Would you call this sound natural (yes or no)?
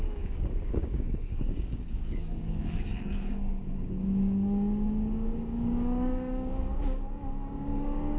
no